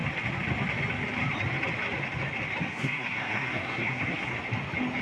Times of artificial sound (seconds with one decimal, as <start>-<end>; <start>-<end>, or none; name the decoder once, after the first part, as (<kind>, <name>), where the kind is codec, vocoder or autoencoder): 2.6-4.3 (codec, SNAC)